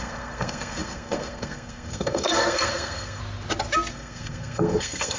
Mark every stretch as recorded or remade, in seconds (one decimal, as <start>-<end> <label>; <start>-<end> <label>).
0.0-3.2 remade; 3.2-3.9 recorded; 3.9-5.2 remade